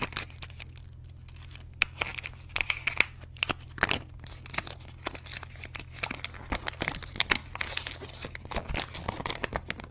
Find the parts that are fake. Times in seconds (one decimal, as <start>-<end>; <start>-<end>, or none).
none